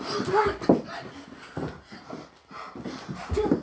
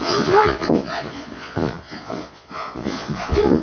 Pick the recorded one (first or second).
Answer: first